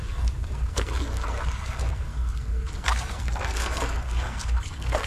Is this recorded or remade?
remade